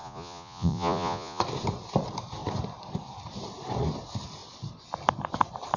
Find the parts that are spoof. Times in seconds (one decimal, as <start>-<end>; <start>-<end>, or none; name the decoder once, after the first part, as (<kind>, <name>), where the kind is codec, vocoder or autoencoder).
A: 0.0-1.4 (vocoder, Vocos)